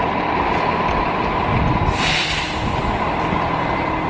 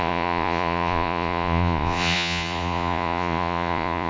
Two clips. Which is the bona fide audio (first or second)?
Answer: first